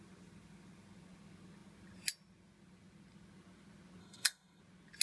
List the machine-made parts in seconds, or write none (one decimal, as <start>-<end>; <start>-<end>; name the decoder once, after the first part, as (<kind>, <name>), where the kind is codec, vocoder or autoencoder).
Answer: 4.0-4.6 (codec, SNAC)